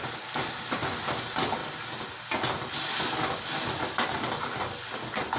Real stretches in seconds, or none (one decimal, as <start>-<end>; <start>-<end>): 0.0-5.4

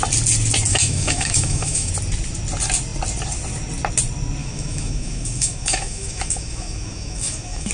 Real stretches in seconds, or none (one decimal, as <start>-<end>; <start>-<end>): 0.0-0.7; 1.9-4.4

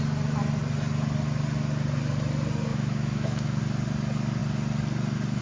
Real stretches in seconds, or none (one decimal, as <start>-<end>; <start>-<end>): 0.0-2.7; 3.6-5.4

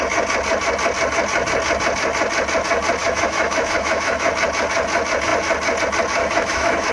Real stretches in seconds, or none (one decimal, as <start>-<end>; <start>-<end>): 0.0-3.0; 4.3-6.2

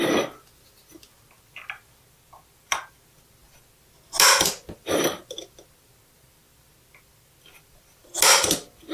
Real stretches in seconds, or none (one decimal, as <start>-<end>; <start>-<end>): 0.0-8.9